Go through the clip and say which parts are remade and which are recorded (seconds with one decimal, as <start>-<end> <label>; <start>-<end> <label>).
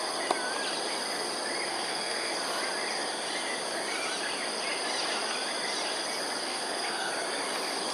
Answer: 0.0-1.7 recorded; 1.7-2.3 remade; 2.3-6.4 recorded; 6.4-7.1 remade; 7.1-7.9 recorded